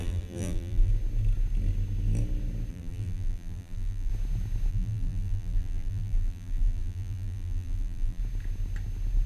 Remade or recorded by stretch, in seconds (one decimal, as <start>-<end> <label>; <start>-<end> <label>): 0.0-0.9 remade; 0.9-2.7 recorded; 2.7-4.1 remade; 4.1-4.7 recorded; 4.7-8.2 remade; 8.2-9.3 recorded